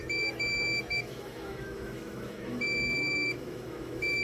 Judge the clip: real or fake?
fake